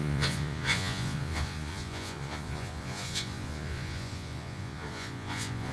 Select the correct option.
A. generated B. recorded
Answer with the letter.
A